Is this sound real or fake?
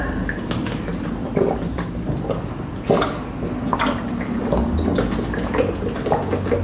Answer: real